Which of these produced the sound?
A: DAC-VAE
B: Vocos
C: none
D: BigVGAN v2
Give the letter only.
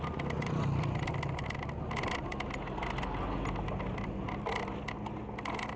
C